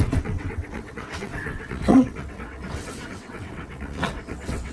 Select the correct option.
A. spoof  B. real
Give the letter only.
A